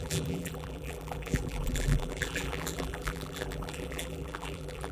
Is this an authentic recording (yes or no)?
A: no